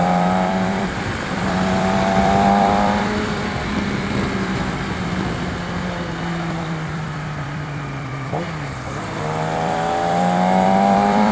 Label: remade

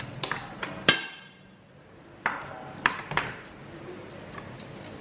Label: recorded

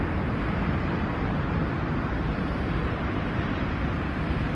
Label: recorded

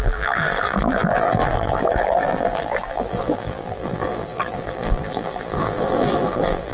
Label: remade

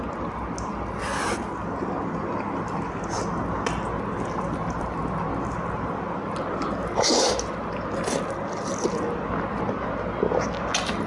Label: recorded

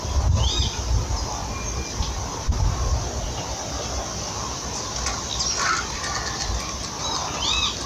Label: recorded